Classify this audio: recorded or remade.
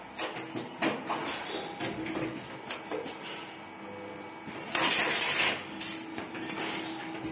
recorded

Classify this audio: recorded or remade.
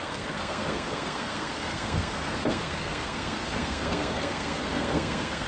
remade